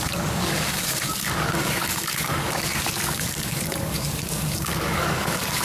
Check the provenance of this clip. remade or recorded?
remade